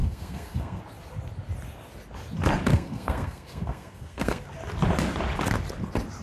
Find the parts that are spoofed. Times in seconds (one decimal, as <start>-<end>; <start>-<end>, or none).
0.0-0.8; 2.7-4.4